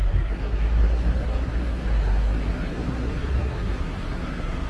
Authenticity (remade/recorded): remade